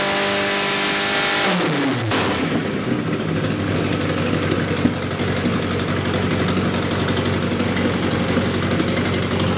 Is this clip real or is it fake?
real